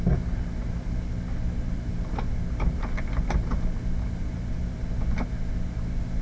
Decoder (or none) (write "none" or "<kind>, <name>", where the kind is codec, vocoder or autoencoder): none